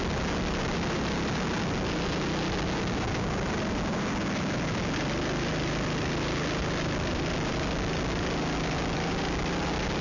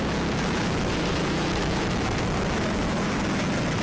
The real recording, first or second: first